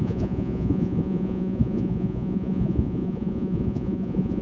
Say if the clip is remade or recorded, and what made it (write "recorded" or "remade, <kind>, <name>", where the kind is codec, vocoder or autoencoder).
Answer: remade, vocoder, Vocos